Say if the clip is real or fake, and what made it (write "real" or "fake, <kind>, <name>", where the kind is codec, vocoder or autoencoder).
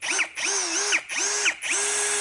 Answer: real